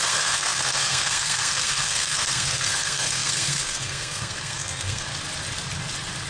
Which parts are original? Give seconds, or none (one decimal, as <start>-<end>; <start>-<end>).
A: 5.1-6.3